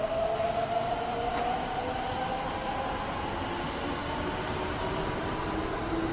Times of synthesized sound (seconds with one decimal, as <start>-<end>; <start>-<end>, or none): none